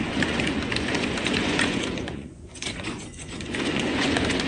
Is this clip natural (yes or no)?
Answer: no